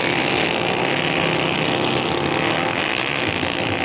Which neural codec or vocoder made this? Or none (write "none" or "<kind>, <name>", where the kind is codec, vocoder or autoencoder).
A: none